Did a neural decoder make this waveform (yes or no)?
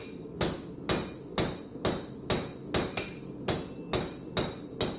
no